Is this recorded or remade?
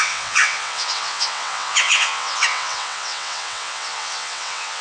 remade